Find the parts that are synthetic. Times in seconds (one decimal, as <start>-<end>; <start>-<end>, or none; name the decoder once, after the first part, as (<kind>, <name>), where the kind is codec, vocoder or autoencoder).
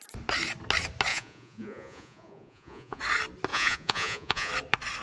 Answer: 1.1-3.0 (vocoder, Vocos); 3.5-4.5